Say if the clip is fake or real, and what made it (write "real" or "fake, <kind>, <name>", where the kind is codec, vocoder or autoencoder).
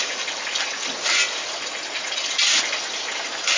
real